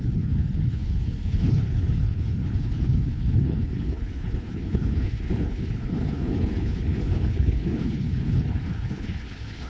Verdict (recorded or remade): remade